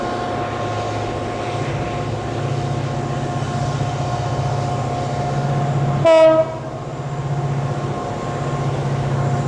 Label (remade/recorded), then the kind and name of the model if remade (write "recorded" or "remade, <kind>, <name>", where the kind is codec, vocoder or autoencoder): recorded